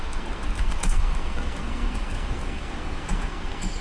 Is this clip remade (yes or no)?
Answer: yes